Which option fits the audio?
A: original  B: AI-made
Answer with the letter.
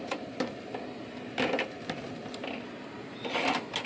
A